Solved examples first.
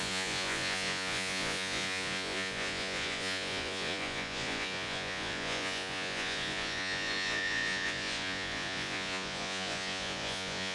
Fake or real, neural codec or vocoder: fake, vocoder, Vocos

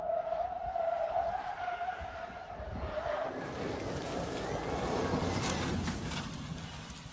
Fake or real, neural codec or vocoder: real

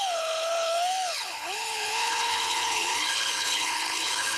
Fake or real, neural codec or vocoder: fake, codec, HILCodec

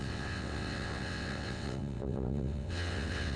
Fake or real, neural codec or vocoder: fake, vocoder, WaveNeXt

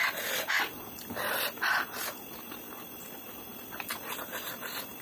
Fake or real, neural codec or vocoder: real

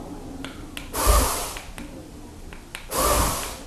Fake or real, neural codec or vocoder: real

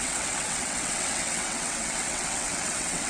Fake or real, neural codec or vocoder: fake, vocoder, WaveNeXt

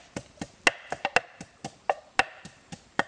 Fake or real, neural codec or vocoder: real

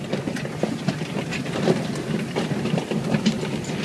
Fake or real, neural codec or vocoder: real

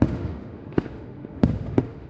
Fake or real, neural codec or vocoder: fake, autoencoder, DAC-VAE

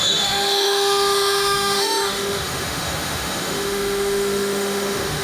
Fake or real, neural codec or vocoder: fake, autoencoder, DAC-VAE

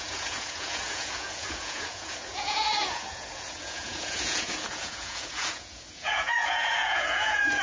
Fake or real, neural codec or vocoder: fake, vocoder, Vocos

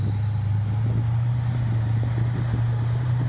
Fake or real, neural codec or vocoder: real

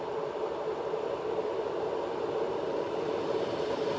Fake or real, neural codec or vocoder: real